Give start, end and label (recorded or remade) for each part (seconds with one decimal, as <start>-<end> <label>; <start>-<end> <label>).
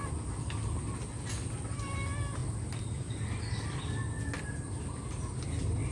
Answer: 0.0-5.9 recorded